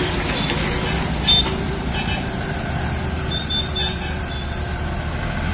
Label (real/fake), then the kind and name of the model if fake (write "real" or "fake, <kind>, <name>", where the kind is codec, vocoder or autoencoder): real